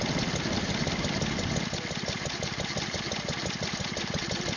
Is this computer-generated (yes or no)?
no